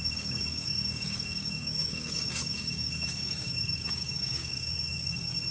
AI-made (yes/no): yes